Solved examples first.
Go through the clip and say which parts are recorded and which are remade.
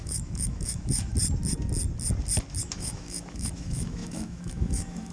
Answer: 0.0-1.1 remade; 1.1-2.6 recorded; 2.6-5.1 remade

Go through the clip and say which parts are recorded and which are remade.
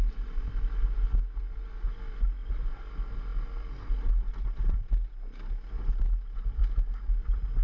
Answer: 0.0-7.6 recorded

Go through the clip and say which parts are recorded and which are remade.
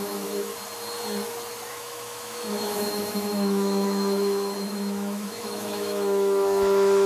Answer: 0.0-0.5 remade; 0.5-1.7 recorded; 1.7-7.1 remade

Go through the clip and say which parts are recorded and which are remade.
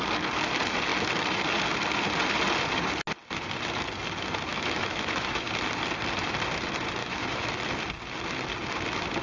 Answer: 0.0-4.5 recorded; 4.5-5.5 remade; 5.5-7.0 recorded; 7.0-7.5 remade; 7.5-9.2 recorded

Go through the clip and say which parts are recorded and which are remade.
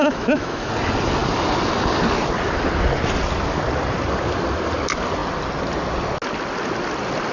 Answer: 0.0-0.7 remade; 0.7-7.3 recorded